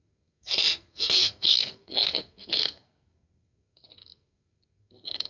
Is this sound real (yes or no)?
no